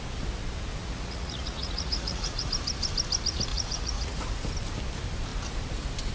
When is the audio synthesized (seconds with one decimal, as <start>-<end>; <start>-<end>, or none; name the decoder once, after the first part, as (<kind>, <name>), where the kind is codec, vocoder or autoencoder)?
0.8-2.5 (vocoder, Vocos); 3.5-4.2